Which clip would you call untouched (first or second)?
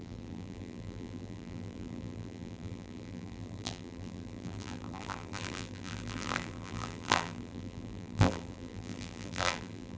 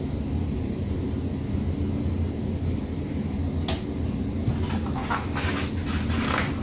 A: second